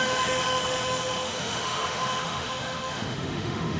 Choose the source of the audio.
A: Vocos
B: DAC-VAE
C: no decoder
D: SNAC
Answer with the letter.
B